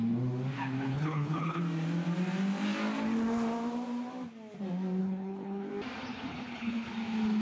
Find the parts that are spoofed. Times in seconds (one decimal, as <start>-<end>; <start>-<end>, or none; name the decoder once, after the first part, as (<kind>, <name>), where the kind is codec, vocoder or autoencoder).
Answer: 0.9-1.6 (codec, HILCodec); 5.0-5.7; 6.3-6.9